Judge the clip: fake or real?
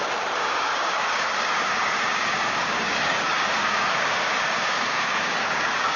fake